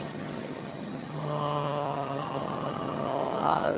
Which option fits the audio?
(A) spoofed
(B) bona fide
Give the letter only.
A